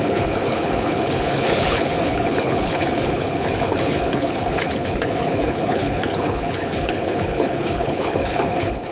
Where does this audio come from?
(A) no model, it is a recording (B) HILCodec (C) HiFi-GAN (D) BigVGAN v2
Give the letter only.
B